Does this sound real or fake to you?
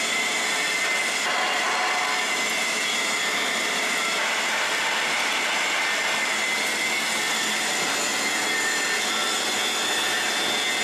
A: real